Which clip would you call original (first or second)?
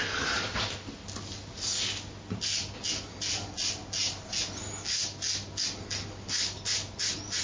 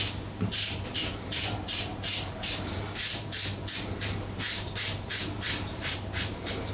first